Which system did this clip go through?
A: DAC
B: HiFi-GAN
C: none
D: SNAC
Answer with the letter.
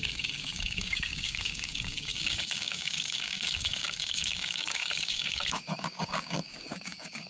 A